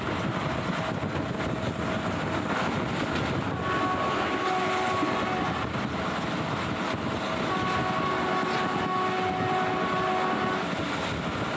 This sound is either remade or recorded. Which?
recorded